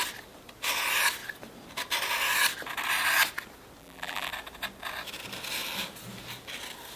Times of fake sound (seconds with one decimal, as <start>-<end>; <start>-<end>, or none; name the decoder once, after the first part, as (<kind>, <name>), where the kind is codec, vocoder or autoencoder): 3.8-4.3 (vocoder, BigVGAN v2)

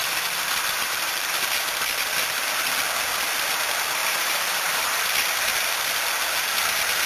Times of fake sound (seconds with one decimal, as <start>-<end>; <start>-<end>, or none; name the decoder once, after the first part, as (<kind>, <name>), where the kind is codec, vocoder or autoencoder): 0.0-2.6 (vocoder, BigVGAN v2); 4.0-5.1